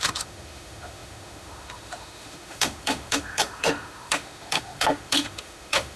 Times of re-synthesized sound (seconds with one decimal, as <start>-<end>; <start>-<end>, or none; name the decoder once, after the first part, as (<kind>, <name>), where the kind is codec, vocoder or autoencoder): 0.0-6.0 (autoencoder, DAC-VAE)